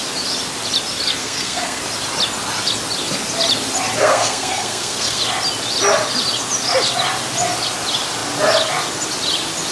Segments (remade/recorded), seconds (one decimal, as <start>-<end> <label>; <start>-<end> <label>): 0.0-1.2 recorded; 1.2-1.8 remade; 1.8-4.0 recorded; 4.0-5.2 remade; 5.2-9.7 recorded